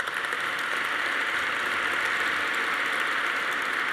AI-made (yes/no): no